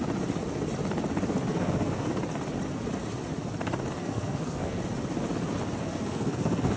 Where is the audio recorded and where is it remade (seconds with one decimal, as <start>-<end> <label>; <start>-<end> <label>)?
0.0-1.5 recorded; 1.5-2.1 remade; 2.1-4.0 recorded; 4.0-4.8 remade; 4.8-5.8 recorded; 5.8-6.8 remade